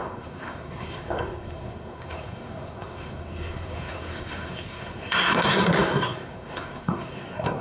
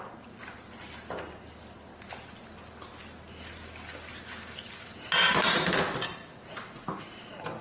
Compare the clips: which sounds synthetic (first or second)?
first